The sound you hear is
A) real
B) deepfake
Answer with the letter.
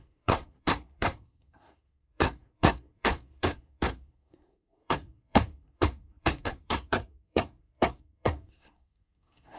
B